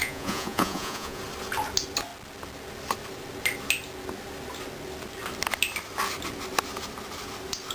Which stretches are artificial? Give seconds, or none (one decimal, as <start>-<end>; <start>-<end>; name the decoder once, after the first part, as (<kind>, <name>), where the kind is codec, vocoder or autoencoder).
0.0-1.2 (vocoder, Vocos)